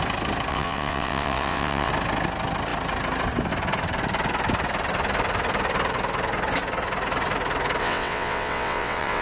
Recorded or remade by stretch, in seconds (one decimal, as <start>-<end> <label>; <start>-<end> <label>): 0.0-0.5 recorded; 0.5-1.9 remade; 1.9-7.8 recorded; 7.8-9.2 remade